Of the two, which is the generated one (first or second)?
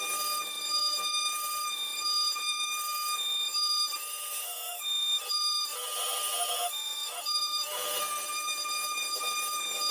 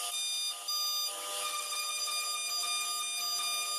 first